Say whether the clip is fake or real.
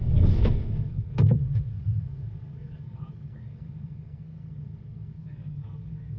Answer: fake